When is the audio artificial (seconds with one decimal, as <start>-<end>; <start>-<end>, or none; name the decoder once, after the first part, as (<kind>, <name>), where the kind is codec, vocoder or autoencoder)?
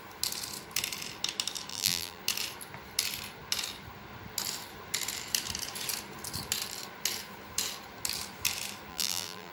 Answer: 1.7-2.2 (vocoder, BigVGAN v2); 8.9-9.5